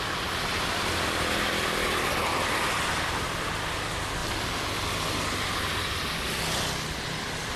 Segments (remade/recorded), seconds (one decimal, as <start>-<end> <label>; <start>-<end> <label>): 0.0-7.6 recorded